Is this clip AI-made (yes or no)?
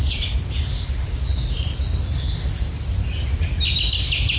no